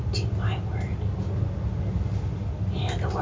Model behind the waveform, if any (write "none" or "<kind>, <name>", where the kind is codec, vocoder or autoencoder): none